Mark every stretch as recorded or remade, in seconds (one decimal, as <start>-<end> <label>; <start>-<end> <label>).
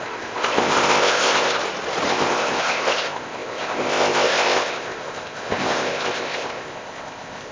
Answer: 0.0-1.6 remade; 1.6-2.1 recorded; 2.1-7.5 remade